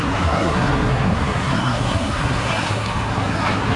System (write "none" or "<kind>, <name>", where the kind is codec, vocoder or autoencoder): codec, SNAC